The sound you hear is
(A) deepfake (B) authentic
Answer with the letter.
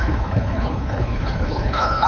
A